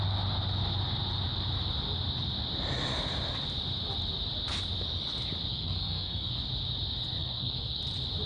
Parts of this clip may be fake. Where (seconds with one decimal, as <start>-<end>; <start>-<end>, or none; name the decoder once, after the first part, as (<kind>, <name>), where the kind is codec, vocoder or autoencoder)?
5.5-6.4 (codec, SNAC); 7.2-7.8